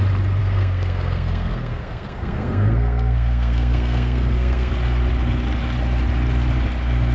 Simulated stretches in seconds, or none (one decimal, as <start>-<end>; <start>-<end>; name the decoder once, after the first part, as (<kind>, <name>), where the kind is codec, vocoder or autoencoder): 0.4-4.7 (codec, SNAC)